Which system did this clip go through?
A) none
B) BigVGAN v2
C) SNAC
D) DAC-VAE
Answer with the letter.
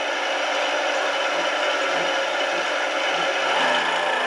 A